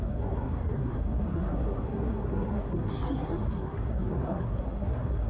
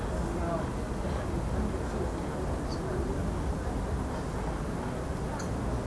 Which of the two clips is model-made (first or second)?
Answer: first